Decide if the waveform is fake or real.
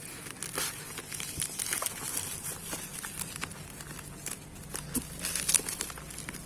real